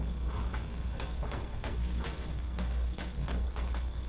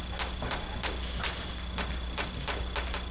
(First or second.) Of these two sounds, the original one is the second